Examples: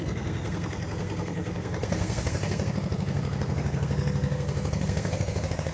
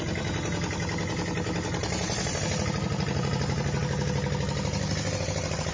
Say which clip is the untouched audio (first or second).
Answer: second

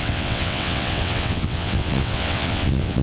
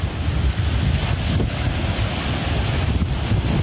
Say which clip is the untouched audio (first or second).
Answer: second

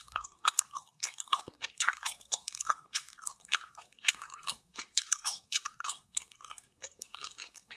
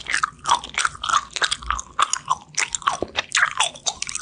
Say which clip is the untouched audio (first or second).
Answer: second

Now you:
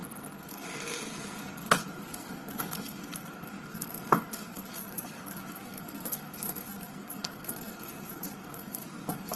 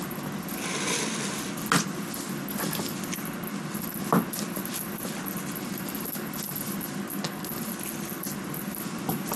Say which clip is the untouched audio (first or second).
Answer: second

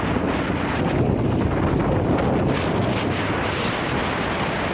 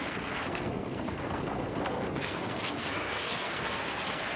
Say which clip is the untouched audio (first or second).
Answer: first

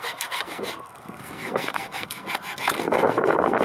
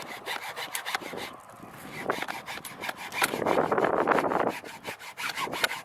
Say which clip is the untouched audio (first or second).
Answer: second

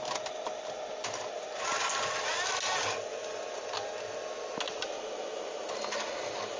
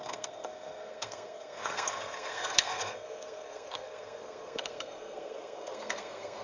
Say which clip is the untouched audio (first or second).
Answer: first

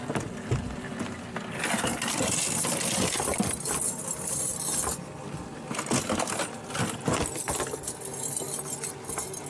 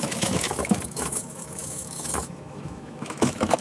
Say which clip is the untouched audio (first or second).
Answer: first